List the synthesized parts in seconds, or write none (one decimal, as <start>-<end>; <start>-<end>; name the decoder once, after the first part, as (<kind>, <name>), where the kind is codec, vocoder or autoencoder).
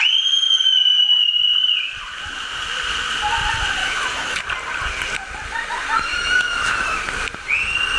3.8-4.4 (autoencoder, DAC-VAE); 6.1-7.0